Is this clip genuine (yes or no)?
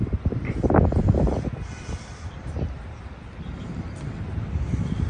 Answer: no